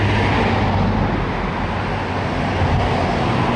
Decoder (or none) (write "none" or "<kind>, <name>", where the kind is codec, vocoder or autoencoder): none